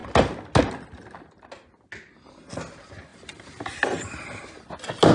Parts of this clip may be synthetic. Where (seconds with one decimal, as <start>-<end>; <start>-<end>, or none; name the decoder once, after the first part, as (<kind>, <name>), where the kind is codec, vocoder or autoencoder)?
3.1-4.4 (vocoder, BigVGAN v2)